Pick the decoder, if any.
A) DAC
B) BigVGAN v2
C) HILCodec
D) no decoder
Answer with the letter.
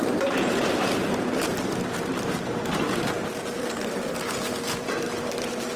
B